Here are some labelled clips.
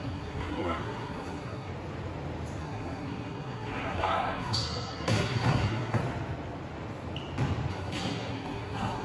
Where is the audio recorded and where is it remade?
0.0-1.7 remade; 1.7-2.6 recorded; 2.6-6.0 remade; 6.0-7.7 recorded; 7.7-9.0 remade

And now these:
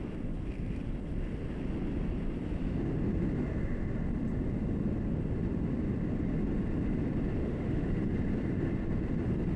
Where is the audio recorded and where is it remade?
0.0-7.4 recorded; 7.4-8.1 remade; 8.1-9.6 recorded